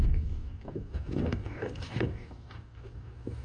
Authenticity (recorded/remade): remade